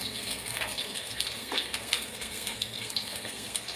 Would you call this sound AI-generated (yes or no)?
yes